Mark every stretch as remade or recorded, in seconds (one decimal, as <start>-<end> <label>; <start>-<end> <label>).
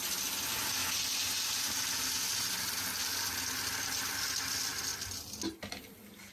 0.0-6.3 recorded